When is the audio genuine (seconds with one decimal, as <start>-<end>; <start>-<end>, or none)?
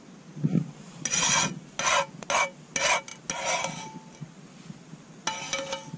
0.0-6.0